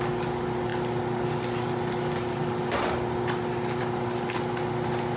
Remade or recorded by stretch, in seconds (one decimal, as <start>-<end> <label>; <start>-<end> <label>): 0.0-5.2 recorded